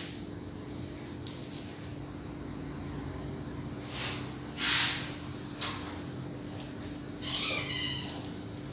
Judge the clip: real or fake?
real